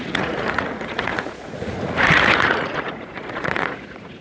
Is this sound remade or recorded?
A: remade